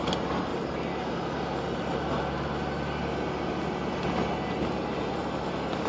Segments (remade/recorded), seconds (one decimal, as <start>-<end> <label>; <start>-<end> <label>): 0.0-5.9 recorded